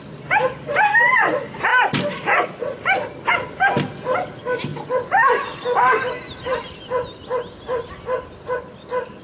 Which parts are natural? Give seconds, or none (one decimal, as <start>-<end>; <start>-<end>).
0.0-9.2